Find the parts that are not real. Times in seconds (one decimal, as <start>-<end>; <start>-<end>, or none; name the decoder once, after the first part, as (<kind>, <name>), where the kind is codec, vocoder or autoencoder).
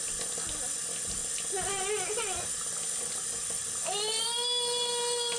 none